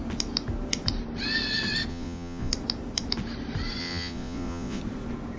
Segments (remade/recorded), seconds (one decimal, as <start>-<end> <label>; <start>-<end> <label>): 0.0-1.9 recorded; 1.9-2.5 remade; 2.5-3.8 recorded; 3.8-4.8 remade; 4.8-5.4 recorded